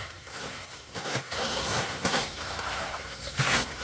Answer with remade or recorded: remade